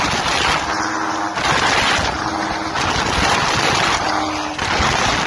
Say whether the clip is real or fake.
real